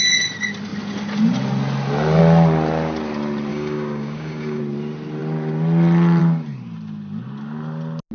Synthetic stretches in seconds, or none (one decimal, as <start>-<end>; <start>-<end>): 3.5-4.6